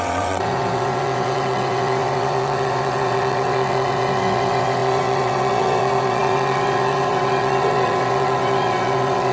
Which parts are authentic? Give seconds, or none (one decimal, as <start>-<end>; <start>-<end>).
none